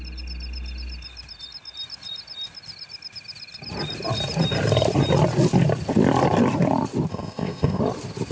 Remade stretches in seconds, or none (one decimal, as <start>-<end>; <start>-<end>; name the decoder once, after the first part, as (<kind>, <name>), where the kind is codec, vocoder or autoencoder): 7.1-7.8 (codec, ZipCodec)